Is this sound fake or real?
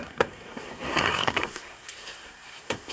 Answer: fake